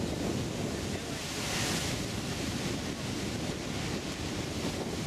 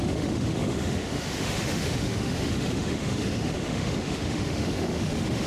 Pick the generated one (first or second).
second